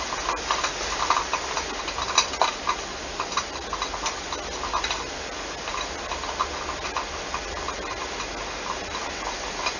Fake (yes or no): no